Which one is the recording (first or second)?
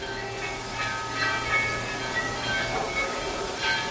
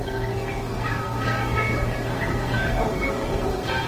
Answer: first